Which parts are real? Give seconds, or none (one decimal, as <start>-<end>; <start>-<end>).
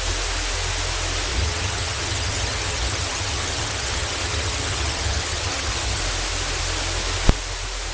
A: 0.0-1.3; 6.0-7.9